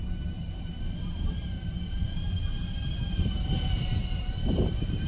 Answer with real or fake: fake